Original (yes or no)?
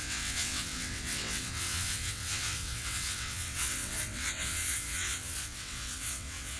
no